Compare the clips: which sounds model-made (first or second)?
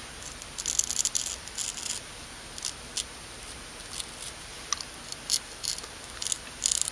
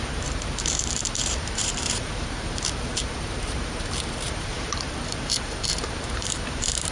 second